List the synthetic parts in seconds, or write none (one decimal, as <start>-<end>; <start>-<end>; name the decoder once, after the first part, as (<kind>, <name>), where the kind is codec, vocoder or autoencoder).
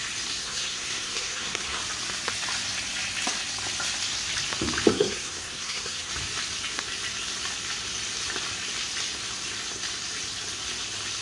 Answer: 0.4-1.8 (codec, SNAC); 4.9-6.1